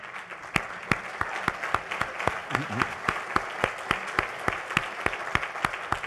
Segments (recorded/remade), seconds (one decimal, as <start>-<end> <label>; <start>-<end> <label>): 0.0-6.1 recorded